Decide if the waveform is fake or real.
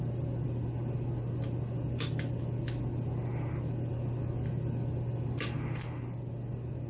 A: real